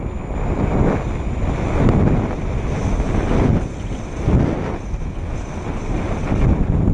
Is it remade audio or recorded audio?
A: recorded